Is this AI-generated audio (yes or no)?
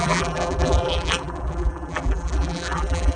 yes